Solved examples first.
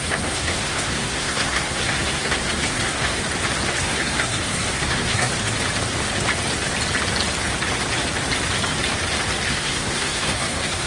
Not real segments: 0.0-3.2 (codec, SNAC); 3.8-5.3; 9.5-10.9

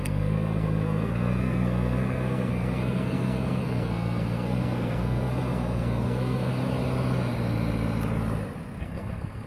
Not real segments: 0.0-6.5 (codec, SNAC); 8.8-9.5

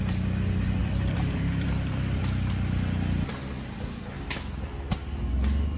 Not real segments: 0.8-2.5 (vocoder, BigVGAN v2)

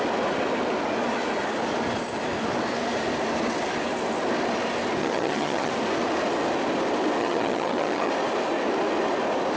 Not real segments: 5.0-5.7 (vocoder, HiFi-GAN); 7.2-8.1

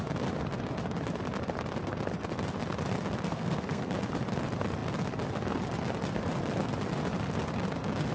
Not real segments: 3.3-3.9 (codec, SNAC)